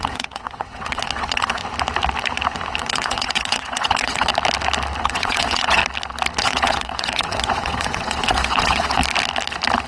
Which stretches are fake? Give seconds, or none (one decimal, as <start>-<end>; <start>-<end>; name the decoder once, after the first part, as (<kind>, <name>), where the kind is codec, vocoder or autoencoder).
0.0-1.6 (vocoder, WaveNeXt); 2.8-4.3; 5.0-5.8; 6.4-9.0

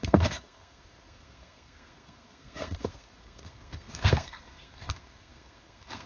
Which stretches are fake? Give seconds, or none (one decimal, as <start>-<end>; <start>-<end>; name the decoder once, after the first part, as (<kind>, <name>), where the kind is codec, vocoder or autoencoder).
0.0-6.1 (codec, SNAC)